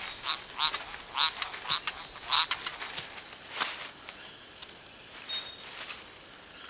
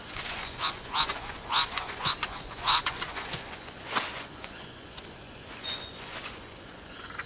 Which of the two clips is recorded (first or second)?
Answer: first